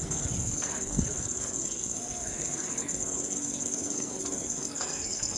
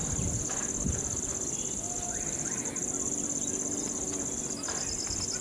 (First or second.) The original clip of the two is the second